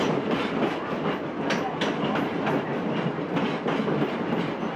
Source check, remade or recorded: recorded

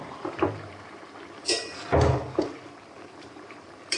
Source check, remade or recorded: remade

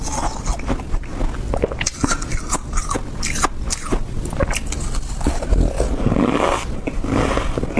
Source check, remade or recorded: recorded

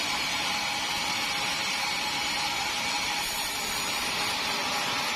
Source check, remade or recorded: remade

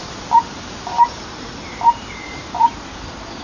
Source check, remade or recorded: remade